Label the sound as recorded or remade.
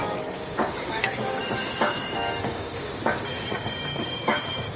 remade